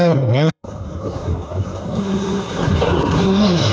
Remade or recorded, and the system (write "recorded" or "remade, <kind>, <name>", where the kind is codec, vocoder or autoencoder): remade, codec, SNAC